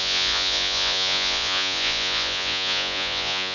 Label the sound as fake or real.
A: fake